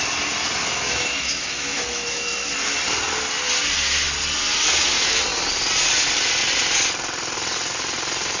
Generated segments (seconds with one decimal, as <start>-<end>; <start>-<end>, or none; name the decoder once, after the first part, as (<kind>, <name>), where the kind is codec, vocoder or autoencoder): 0.6-2.5 (autoencoder, DAC-VAE)